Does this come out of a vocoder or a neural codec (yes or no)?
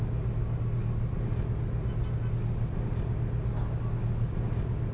no